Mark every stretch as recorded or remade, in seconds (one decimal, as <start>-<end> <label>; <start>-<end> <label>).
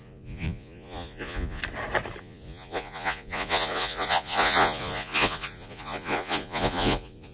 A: 0.0-1.6 remade; 1.6-2.2 recorded; 2.2-7.3 remade